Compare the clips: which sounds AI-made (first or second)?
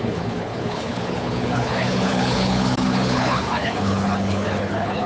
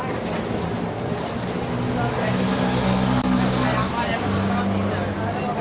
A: first